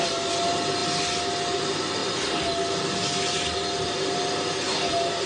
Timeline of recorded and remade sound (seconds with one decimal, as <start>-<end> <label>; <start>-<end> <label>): 0.0-5.3 recorded